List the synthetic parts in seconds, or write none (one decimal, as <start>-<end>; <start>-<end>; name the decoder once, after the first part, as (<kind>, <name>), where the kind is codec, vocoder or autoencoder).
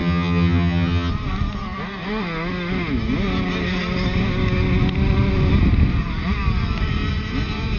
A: 0.0-1.1 (vocoder, HiFi-GAN)